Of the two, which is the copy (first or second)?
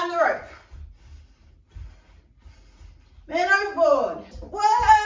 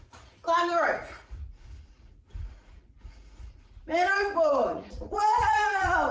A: second